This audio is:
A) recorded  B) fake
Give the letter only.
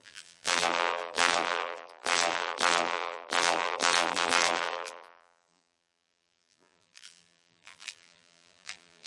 B